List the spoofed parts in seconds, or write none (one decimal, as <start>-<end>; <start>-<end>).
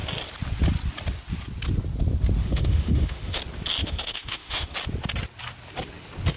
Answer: 2.4-3.4; 3.8-4.7